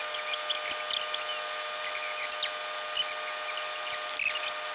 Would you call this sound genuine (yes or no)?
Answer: yes